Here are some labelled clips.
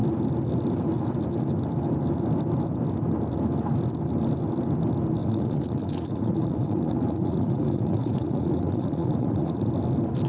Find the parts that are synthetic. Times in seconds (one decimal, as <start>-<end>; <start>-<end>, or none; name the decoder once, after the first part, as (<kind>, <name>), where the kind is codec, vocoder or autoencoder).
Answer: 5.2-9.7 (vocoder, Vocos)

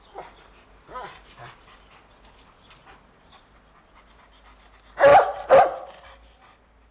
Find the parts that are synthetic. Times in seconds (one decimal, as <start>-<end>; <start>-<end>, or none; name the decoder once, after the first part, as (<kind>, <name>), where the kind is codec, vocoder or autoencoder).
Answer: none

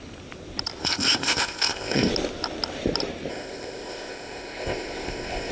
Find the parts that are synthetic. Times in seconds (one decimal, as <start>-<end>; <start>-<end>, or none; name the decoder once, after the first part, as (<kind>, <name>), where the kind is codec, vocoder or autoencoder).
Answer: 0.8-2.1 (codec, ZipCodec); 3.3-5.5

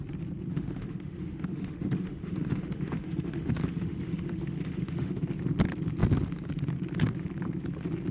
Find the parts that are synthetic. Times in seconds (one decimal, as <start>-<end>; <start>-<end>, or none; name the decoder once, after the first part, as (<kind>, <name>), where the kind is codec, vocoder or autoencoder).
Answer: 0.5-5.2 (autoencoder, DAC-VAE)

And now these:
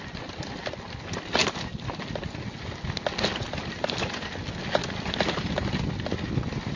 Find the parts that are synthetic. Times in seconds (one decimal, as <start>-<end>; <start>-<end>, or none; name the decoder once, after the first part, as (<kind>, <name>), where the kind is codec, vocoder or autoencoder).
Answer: none

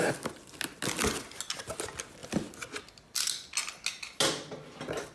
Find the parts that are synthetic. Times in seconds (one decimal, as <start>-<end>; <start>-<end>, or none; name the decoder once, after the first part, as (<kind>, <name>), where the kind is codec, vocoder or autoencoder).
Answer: none